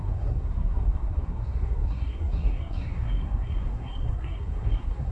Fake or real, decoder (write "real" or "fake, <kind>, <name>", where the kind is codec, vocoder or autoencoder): fake, codec, SNAC